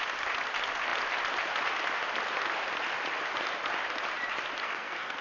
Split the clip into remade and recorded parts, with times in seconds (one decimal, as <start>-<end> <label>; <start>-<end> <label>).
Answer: 0.0-4.6 recorded; 4.6-5.2 remade